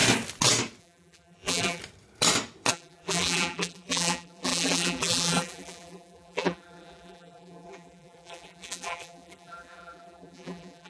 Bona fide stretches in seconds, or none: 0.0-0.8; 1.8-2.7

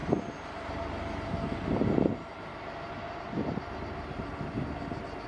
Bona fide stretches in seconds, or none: 0.0-5.3

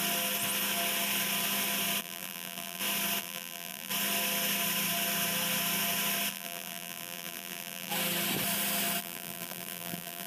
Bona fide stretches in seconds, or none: 0.0-2.0; 2.8-3.2; 3.9-6.3; 7.9-9.0

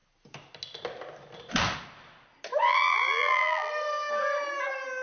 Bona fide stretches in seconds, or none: 0.0-2.7; 3.7-5.0